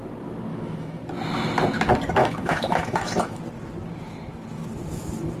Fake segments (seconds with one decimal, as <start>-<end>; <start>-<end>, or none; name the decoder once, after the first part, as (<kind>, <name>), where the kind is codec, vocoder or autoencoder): 0.5-1.0 (autoencoder, DAC-VAE); 2.2-3.4

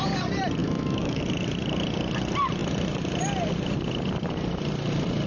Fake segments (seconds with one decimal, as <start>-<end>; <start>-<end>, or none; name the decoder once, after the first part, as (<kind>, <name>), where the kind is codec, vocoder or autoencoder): 0.6-1.2 (autoencoder, DAC-VAE)

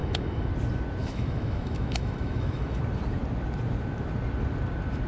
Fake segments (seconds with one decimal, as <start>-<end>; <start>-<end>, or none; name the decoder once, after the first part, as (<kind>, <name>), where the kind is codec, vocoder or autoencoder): 0.0-0.5 (autoencoder, DAC-VAE); 1.0-2.8